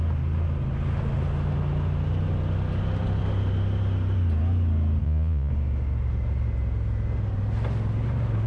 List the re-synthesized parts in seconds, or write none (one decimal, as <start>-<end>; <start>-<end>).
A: 5.0-5.5